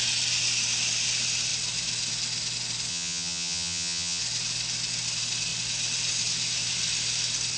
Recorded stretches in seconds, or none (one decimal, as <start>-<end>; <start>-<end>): 0.0-2.9; 4.2-7.6